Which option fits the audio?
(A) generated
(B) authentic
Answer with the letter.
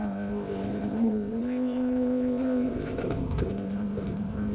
A